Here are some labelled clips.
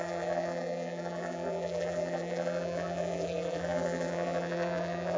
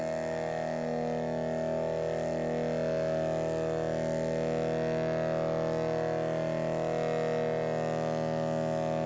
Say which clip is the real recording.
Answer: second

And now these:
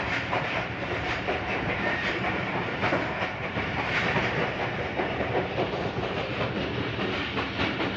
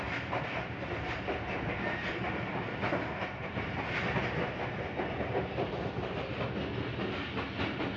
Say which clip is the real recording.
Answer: second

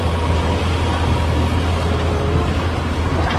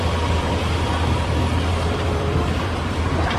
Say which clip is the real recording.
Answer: first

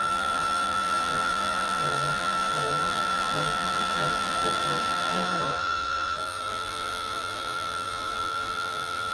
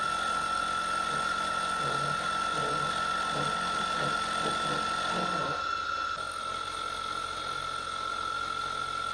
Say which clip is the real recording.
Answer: second